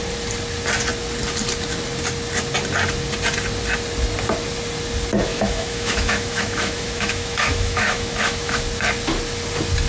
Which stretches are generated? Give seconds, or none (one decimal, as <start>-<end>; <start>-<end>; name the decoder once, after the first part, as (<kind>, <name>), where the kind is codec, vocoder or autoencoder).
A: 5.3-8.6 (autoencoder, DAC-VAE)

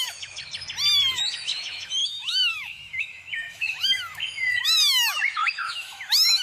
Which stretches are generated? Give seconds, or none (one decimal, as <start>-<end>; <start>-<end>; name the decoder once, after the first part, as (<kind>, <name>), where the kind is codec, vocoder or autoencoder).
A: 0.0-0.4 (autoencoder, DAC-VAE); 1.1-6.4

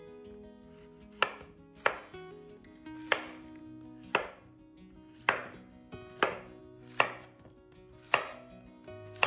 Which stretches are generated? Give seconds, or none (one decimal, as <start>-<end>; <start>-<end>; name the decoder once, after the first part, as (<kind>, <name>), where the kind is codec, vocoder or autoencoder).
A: none